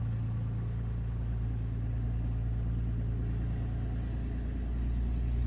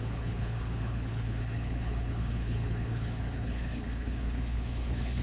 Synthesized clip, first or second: second